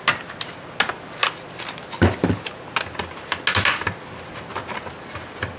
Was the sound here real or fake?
real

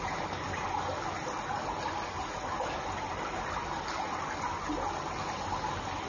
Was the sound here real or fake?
real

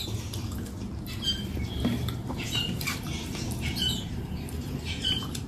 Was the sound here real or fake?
fake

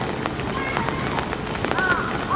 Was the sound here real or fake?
real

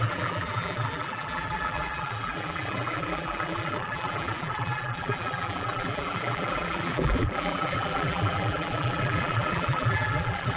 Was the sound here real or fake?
fake